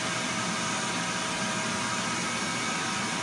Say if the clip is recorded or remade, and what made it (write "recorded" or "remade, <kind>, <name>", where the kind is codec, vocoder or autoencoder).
recorded